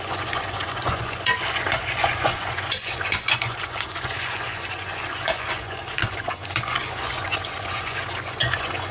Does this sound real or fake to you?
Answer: fake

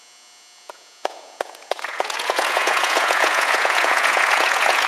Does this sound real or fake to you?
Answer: fake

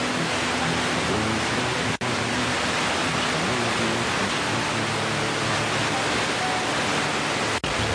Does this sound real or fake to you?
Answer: real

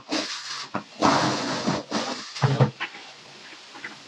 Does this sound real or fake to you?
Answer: fake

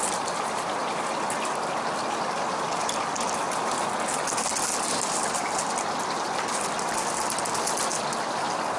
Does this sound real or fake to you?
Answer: real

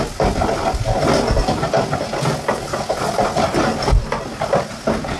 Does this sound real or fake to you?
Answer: real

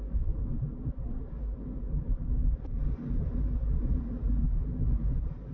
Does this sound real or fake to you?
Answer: real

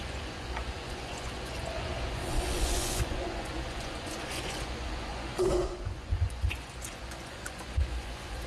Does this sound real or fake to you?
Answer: fake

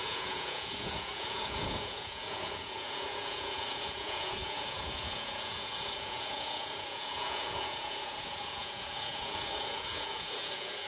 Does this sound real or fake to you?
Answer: fake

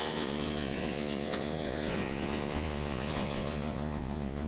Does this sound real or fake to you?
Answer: fake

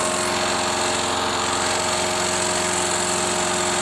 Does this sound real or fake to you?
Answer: real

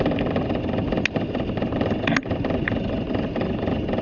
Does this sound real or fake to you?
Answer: real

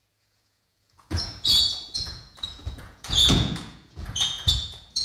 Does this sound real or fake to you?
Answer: fake